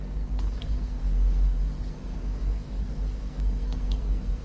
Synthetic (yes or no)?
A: yes